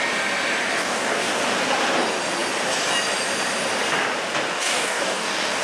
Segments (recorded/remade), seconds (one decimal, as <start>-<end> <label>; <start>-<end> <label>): 0.0-0.7 recorded; 0.7-1.4 remade; 1.4-4.5 recorded; 4.5-5.6 remade